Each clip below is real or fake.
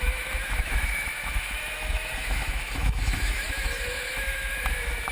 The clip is fake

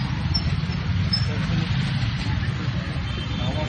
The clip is real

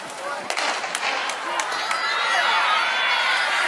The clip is real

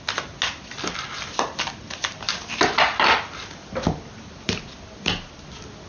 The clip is real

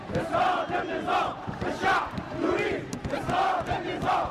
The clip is real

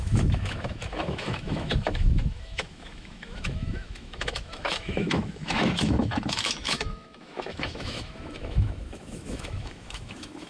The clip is fake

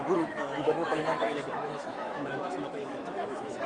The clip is fake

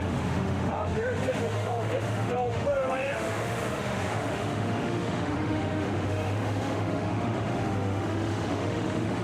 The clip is fake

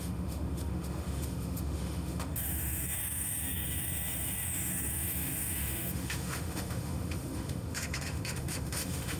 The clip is fake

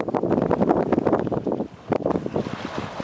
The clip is real